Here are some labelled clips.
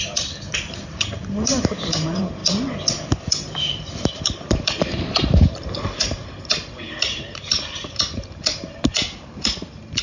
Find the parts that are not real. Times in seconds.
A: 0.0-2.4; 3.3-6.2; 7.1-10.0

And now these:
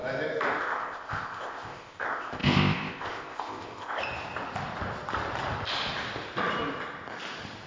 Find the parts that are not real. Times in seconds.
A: 0.6-4.0

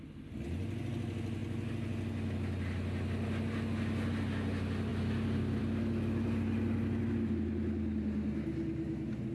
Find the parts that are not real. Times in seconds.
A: none

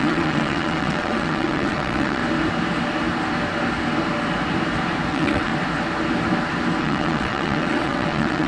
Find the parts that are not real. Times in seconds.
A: 0.0-2.2; 5.1-5.5; 6.8-8.5

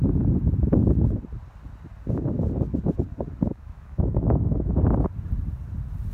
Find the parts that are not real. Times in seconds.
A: 3.5-4.8

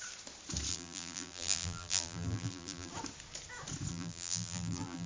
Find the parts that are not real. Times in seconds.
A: 0.7-2.9; 3.9-5.1